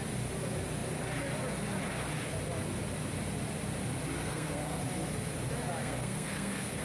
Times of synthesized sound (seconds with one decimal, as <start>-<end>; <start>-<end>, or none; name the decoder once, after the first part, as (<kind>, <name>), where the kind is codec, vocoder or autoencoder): 4.2-4.8 (codec, SNAC); 5.8-6.8